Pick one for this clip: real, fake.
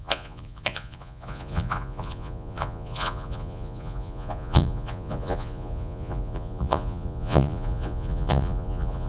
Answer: fake